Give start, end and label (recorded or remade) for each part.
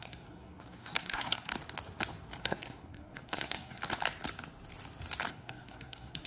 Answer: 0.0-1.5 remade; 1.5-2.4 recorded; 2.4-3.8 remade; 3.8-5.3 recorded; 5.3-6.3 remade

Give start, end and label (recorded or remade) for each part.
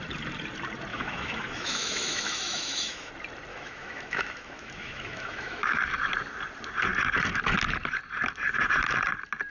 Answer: 0.0-0.9 recorded; 0.9-3.1 remade; 3.1-3.5 recorded; 3.5-5.8 remade; 5.8-9.5 recorded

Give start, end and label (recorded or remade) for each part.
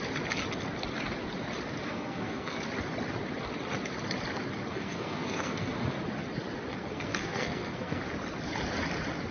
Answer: 0.0-1.9 recorded; 1.9-2.6 remade; 2.6-4.7 recorded; 4.7-5.7 remade; 5.7-6.7 recorded; 6.7-8.0 remade; 8.0-9.3 recorded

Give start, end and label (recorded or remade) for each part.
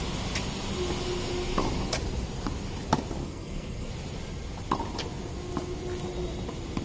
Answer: 0.0-3.2 recorded; 3.2-3.9 remade; 3.9-6.8 recorded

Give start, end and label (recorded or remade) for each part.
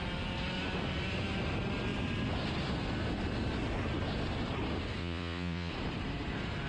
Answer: 0.0-5.0 recorded; 5.0-5.7 remade; 5.7-6.7 recorded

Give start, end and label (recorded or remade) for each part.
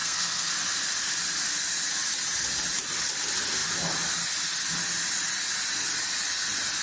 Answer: 0.0-0.5 remade; 0.5-6.8 recorded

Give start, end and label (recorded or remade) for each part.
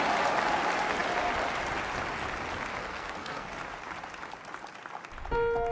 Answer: 0.0-2.8 recorded; 2.8-3.5 remade; 3.5-5.7 recorded